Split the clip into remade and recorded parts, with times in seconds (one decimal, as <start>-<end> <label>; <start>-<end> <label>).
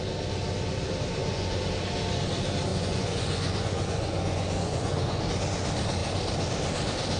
0.0-1.2 recorded; 1.2-1.7 remade; 1.7-2.7 recorded; 2.7-5.2 remade; 5.2-7.2 recorded